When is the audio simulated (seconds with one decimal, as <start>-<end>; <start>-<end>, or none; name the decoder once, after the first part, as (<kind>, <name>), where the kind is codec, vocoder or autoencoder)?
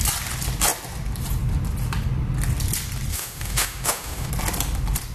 3.1-4.3 (autoencoder, DAC-VAE)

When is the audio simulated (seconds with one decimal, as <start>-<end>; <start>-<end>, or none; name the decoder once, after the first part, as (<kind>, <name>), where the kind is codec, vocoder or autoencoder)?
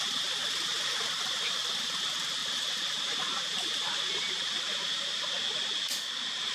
none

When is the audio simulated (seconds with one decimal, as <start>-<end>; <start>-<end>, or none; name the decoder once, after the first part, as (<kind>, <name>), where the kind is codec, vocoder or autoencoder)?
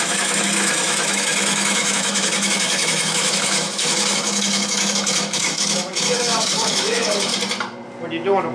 0.0-7.3 (autoencoder, DAC-VAE)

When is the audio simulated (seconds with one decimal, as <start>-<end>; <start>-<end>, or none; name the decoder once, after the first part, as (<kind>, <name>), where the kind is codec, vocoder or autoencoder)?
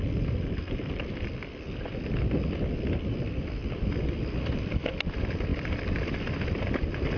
none